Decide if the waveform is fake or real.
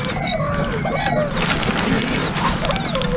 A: real